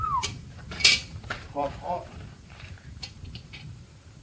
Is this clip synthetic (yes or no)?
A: yes